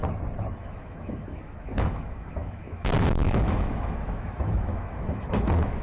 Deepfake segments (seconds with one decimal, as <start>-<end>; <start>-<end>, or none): 0.6-5.8